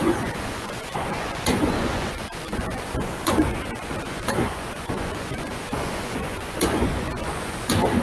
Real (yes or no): no